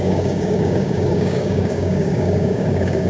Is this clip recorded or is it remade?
remade